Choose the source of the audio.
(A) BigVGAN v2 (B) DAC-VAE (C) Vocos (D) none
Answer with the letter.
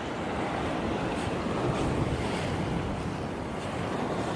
D